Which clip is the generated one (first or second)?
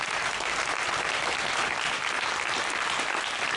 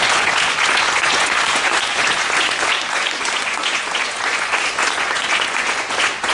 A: second